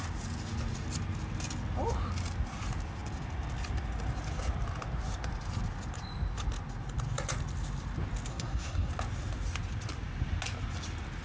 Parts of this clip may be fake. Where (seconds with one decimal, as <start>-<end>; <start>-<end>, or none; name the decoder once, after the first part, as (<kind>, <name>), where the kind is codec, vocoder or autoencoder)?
8.3-8.9 (codec, SNAC)